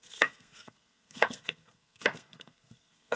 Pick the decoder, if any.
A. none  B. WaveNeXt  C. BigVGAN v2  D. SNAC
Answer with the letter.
D